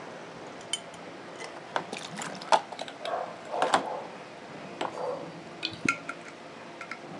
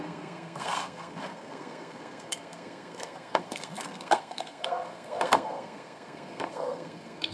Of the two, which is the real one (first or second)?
first